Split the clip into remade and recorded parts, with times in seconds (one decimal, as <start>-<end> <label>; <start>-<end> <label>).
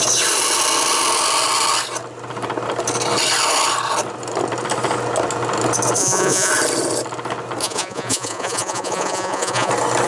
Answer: 0.0-6.0 recorded; 6.0-6.5 remade; 6.5-7.6 recorded; 7.6-9.7 remade; 9.7-10.1 recorded